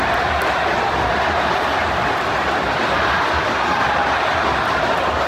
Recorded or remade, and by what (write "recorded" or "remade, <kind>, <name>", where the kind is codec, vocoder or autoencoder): recorded